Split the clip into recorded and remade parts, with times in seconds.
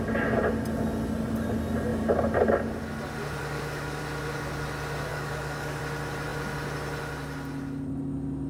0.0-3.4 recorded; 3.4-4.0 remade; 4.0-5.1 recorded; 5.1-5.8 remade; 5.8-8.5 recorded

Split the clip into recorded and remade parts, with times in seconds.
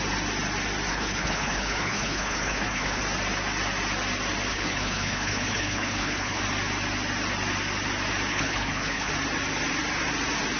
0.0-0.9 recorded; 0.9-3.0 remade; 3.0-4.5 recorded; 4.5-6.4 remade; 6.4-8.3 recorded; 8.3-9.1 remade; 9.1-10.6 recorded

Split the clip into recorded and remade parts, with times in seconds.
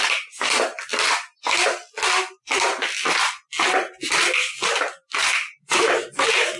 0.0-5.4 recorded; 5.4-6.6 remade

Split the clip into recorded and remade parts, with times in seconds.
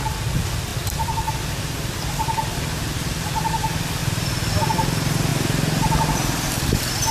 0.0-4.0 remade; 4.0-4.7 recorded; 4.7-5.3 remade; 5.3-6.1 recorded; 6.1-7.1 remade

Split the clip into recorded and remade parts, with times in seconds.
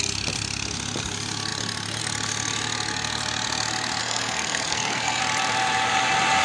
0.0-4.0 recorded; 4.0-5.2 remade; 5.2-6.4 recorded